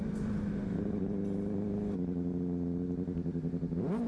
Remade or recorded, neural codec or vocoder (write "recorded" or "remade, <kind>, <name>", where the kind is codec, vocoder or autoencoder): recorded